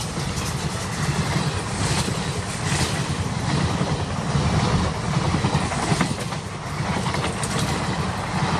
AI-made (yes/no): no